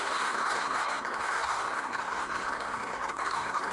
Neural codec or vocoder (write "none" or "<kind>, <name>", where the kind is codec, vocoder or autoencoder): codec, SNAC